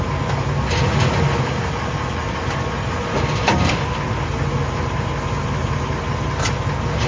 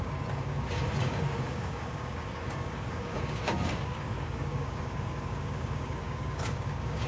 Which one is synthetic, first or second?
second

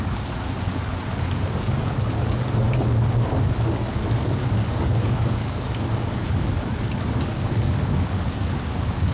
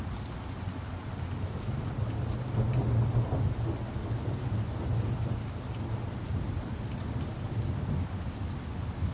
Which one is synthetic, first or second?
first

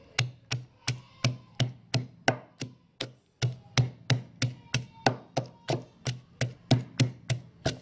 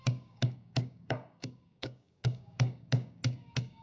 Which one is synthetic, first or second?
second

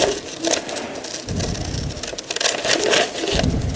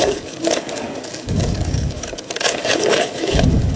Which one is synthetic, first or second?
second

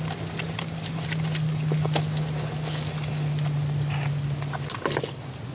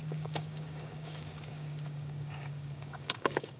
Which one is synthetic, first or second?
second